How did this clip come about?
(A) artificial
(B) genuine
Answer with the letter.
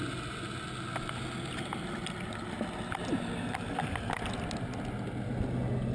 B